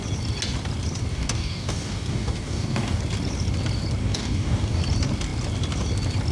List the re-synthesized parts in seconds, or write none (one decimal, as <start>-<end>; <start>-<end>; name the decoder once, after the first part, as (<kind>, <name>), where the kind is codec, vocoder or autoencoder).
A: 1.1-3.0 (codec, DAC); 4.0-4.8